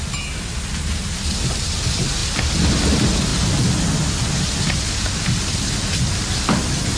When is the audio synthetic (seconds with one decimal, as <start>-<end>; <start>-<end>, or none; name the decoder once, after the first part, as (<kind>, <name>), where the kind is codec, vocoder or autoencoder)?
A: none